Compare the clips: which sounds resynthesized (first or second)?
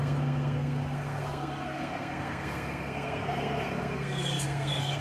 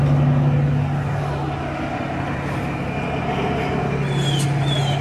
first